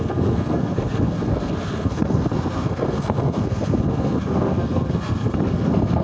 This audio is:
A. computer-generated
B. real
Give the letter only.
A